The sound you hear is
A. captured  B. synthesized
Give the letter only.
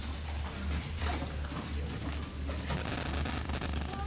A